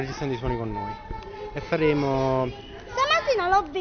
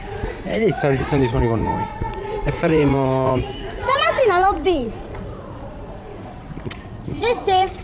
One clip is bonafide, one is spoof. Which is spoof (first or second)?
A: second